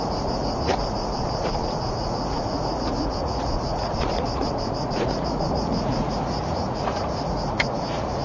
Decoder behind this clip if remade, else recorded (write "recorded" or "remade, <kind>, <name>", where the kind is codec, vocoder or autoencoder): remade, vocoder, Vocos